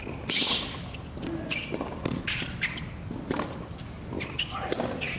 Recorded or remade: recorded